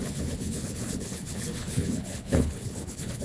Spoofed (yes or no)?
yes